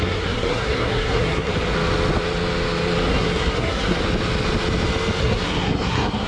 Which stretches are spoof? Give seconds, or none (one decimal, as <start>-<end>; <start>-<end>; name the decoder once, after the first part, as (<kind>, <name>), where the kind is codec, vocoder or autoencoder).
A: 0.0-1.5 (codec, SNAC); 3.1-4.0; 5.2-6.3